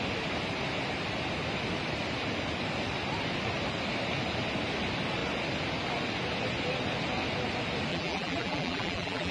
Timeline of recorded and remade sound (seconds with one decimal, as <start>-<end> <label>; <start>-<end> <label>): 0.0-7.9 recorded; 7.9-9.3 remade